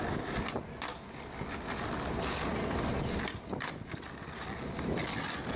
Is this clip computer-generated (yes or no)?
no